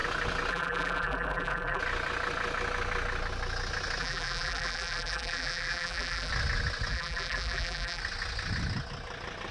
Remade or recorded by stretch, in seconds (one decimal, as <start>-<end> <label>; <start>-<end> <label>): 0.0-0.5 recorded; 0.5-1.8 remade; 1.8-4.0 recorded; 4.0-6.3 remade; 6.3-6.9 recorded; 6.9-8.0 remade; 8.0-9.5 recorded